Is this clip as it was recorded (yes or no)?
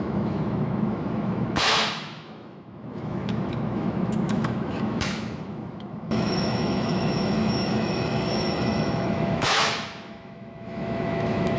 no